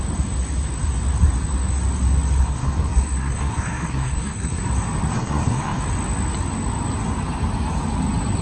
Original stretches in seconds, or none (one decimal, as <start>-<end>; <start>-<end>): 0.0-2.4; 4.6-5.1; 5.8-8.4